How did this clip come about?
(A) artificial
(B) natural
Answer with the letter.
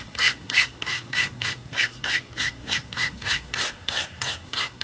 A